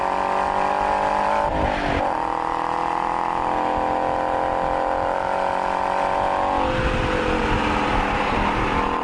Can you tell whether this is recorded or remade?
recorded